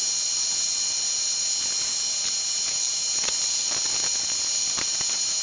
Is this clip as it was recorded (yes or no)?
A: yes